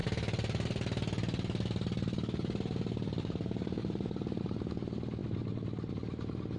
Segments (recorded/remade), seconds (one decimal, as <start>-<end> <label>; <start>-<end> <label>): 0.0-5.2 remade; 5.2-5.9 recorded; 5.9-6.6 remade